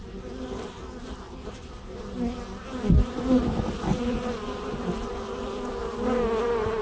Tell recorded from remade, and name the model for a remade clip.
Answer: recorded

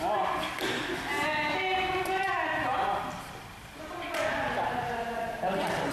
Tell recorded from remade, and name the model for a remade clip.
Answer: recorded